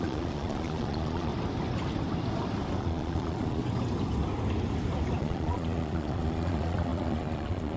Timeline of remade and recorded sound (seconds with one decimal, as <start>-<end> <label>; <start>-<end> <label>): 0.0-1.3 remade; 1.3-2.8 recorded; 2.8-3.6 remade; 3.6-5.2 recorded; 5.2-7.8 remade